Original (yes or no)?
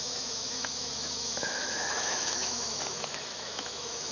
no